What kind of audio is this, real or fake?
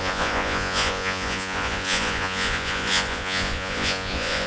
fake